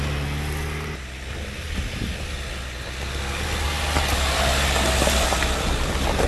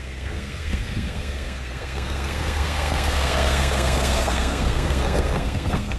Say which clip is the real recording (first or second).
first